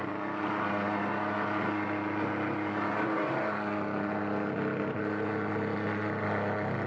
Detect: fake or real real